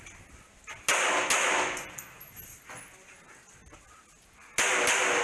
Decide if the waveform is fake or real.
real